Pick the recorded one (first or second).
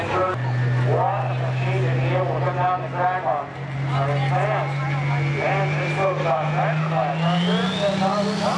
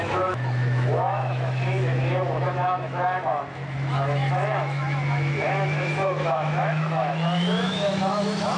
first